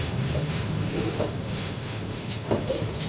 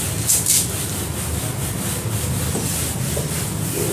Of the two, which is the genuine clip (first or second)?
second